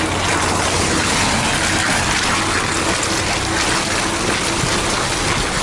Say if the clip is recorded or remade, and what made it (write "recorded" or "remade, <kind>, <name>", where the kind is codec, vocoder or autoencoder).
recorded